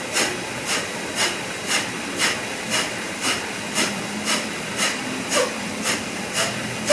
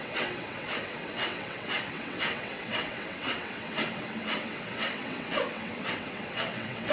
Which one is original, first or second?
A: first